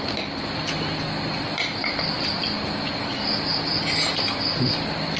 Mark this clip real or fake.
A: fake